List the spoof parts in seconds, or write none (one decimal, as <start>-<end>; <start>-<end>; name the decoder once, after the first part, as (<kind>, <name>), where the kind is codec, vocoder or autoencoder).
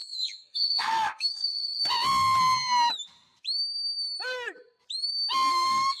0.0-1.8 (codec, SNAC); 5.5-6.0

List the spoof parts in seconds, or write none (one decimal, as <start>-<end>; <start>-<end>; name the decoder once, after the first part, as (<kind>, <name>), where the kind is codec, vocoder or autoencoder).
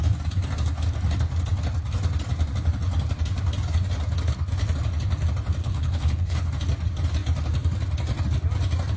5.6-6.5 (codec, HILCodec)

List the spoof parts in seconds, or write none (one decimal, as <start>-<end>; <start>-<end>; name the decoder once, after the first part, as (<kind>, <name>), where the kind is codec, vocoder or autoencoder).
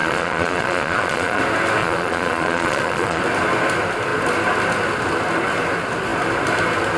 0.0-1.4 (vocoder, Vocos); 1.8-3.2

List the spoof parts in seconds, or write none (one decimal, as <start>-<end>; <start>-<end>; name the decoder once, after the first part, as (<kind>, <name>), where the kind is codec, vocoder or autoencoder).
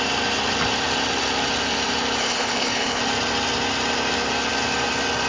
2.2-3.0 (codec, HILCodec)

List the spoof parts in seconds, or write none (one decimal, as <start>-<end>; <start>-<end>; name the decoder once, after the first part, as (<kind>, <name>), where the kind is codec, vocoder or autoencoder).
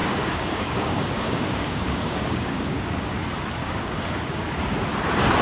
0.0-3.2 (codec, DAC); 3.6-4.5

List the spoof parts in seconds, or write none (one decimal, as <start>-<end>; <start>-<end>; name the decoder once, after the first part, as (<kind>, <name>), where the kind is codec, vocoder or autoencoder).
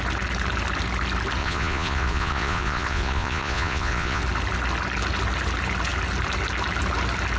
1.4-4.2 (vocoder, Vocos)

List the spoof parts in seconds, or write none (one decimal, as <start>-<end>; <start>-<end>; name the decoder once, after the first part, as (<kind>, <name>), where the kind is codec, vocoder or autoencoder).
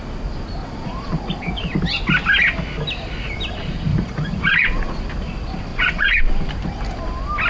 0.6-1.4 (vocoder, Vocos); 3.9-5.0; 5.7-6.2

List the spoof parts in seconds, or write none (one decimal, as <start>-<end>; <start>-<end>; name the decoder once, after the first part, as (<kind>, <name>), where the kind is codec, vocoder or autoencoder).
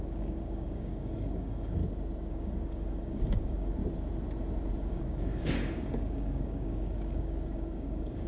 0.0-1.8 (codec, DAC); 2.3-3.8; 4.9-8.3